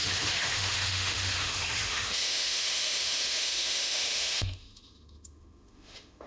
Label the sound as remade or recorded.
remade